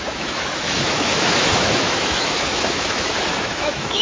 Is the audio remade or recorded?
remade